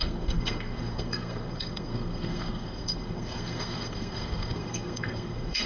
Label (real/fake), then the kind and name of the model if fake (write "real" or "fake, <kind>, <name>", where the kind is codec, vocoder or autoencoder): fake, codec, SNAC